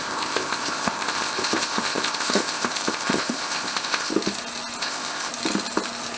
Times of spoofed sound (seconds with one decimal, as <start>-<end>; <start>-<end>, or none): 0.0-4.1; 4.8-5.3